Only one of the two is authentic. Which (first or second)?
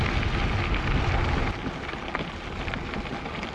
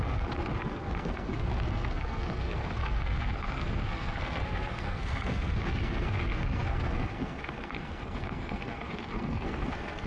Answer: first